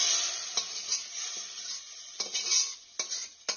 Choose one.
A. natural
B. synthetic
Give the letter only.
A